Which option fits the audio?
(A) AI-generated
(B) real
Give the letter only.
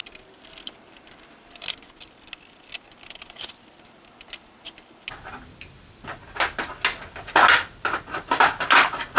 B